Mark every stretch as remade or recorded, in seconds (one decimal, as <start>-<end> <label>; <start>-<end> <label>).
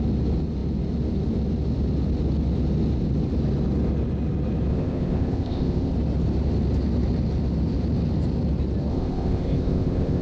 0.0-4.7 recorded; 4.7-5.9 remade; 5.9-8.9 recorded; 8.9-10.2 remade